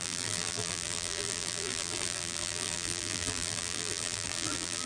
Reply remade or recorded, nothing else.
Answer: remade